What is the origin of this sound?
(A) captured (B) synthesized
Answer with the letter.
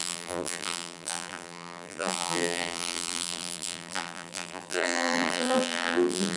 B